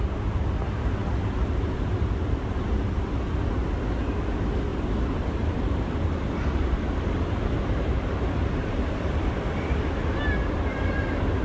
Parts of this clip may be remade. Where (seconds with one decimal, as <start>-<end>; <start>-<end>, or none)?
4.7-9.1